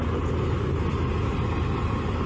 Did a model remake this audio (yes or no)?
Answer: no